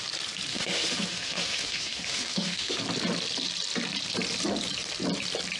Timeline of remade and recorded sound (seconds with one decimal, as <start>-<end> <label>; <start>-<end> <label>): 0.0-0.5 recorded; 0.5-2.8 remade; 2.8-5.6 recorded